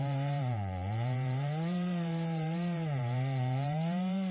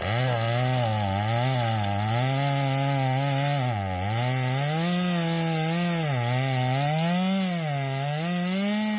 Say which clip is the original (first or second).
second